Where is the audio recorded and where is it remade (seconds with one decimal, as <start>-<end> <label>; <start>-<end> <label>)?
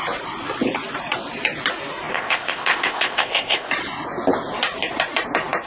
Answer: 0.0-2.1 recorded; 2.1-3.7 remade; 3.7-5.7 recorded